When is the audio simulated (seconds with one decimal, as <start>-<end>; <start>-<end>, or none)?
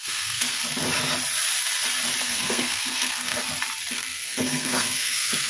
0.0-0.6; 2.2-3.4; 3.9-5.5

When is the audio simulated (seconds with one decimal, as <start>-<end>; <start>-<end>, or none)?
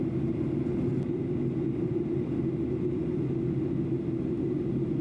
none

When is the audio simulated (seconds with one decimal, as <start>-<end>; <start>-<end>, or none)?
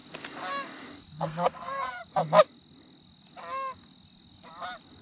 1.2-2.0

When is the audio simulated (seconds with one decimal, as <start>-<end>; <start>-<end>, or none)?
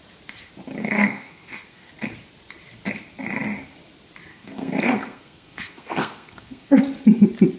0.8-1.9; 4.3-6.8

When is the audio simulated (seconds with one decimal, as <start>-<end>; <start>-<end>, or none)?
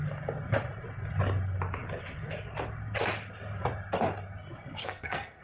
4.8-5.4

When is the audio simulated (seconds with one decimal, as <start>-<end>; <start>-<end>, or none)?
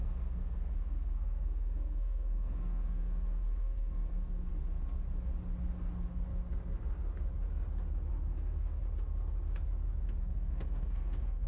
0.0-4.5; 8.1-8.8; 10.2-11.5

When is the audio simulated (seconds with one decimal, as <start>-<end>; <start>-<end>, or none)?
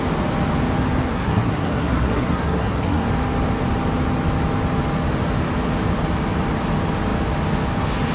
1.1-3.1